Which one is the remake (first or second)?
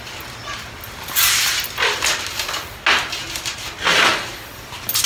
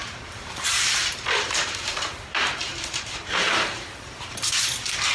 second